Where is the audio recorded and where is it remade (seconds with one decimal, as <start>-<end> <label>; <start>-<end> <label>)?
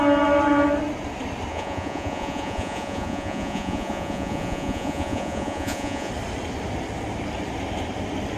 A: 0.0-1.5 recorded; 1.5-6.1 remade; 6.1-8.4 recorded